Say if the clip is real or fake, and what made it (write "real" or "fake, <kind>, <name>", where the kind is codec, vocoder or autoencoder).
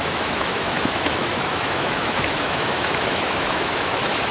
fake, autoencoder, DAC-VAE